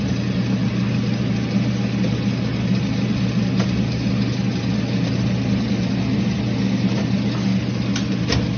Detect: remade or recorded recorded